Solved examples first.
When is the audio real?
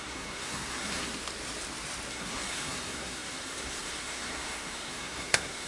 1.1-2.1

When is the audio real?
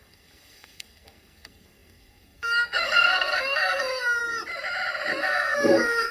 4.2-5.2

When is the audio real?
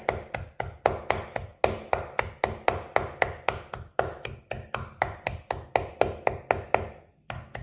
0.0-7.6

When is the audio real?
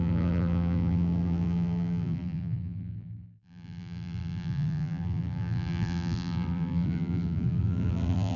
none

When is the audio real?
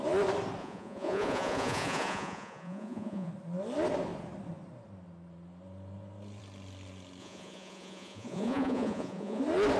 0.0-0.6; 3.3-7.2; 9.4-9.8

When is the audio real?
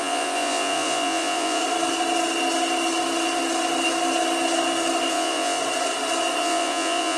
1.6-5.1; 5.6-6.4